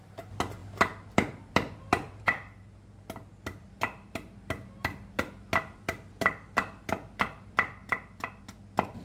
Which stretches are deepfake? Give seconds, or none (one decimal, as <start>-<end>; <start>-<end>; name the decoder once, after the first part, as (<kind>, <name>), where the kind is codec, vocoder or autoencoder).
none